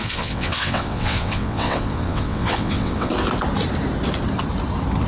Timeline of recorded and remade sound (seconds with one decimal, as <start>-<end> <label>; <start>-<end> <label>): 0.0-3.1 remade; 3.1-5.1 recorded